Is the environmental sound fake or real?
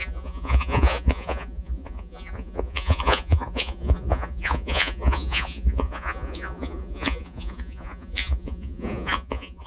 fake